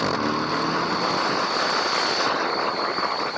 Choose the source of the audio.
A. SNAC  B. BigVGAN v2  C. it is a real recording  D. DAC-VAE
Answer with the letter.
C